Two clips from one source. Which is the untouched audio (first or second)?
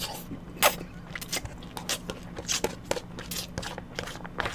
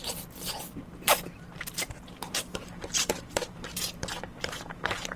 first